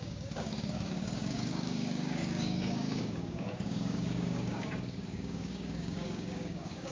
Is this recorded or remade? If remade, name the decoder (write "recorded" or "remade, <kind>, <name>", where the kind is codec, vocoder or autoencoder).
remade, codec, DAC